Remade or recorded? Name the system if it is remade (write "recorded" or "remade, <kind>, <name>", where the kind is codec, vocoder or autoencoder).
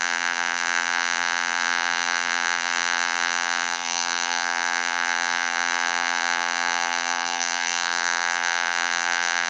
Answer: remade, vocoder, BigVGAN v2